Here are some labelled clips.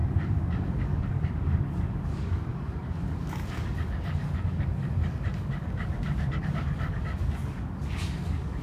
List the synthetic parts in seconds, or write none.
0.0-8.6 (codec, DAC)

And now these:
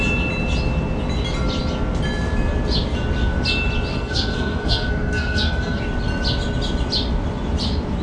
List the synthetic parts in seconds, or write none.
3.9-5.8 (codec, SNAC)